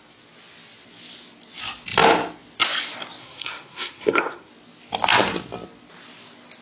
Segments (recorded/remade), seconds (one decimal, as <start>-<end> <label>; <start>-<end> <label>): 0.0-3.2 recorded; 3.2-4.5 remade; 4.5-6.6 recorded